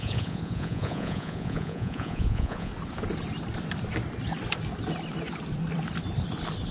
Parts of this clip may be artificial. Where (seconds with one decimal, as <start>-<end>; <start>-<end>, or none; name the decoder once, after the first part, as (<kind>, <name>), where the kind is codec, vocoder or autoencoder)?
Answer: 0.0-2.7 (vocoder, Vocos)